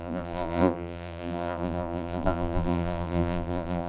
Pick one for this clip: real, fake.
fake